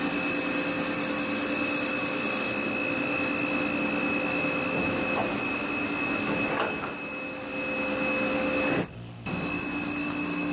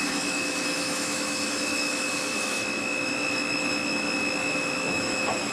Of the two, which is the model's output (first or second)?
second